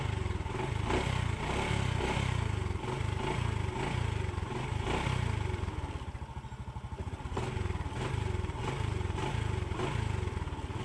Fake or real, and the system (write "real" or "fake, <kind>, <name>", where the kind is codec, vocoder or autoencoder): real